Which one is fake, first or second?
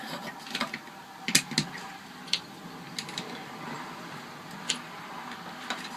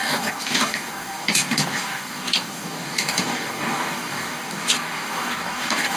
second